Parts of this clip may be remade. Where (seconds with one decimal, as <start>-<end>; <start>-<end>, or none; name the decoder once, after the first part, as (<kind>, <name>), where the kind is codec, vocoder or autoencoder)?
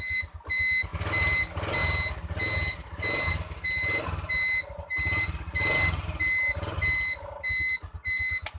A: none